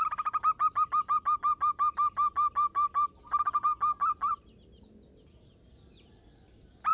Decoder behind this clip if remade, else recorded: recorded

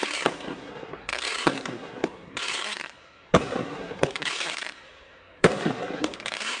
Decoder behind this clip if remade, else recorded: remade, codec, SNAC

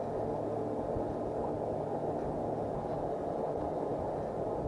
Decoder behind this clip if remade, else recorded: recorded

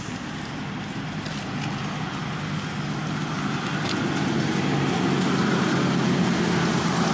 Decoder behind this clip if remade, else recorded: recorded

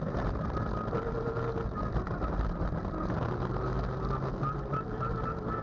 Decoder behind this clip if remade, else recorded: recorded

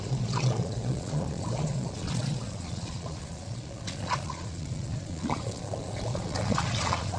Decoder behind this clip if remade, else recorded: remade, vocoder, Vocos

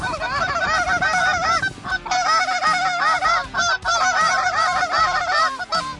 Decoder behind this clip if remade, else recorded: recorded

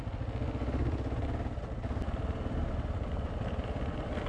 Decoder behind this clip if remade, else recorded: recorded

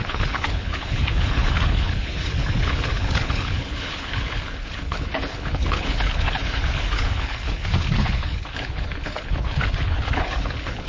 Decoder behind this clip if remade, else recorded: remade, codec, HILCodec